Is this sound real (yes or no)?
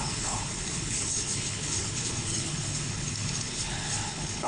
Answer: no